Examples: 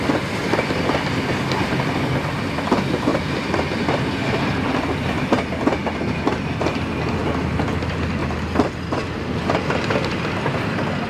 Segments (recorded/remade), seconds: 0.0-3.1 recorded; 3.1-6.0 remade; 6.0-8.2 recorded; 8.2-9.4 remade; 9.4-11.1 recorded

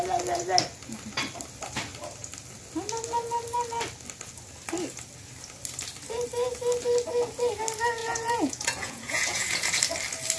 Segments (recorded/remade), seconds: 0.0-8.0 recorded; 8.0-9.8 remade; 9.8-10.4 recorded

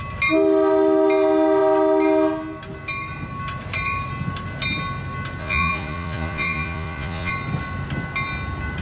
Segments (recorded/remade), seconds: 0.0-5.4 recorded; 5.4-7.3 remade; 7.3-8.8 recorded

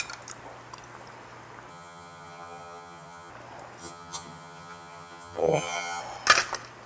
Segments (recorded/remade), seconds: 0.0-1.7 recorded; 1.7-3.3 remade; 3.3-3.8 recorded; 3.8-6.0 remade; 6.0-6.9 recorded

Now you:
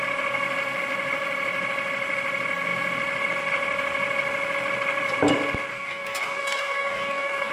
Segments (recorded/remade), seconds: 0.0-5.7 recorded; 5.7-7.5 remade